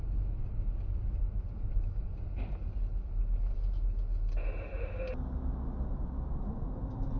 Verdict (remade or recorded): recorded